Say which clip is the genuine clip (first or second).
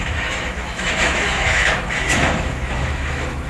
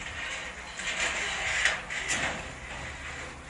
second